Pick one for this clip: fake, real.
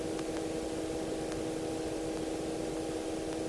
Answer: real